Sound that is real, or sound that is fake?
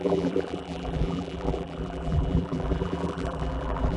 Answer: fake